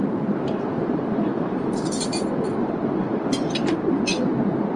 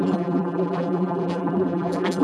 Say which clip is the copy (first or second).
second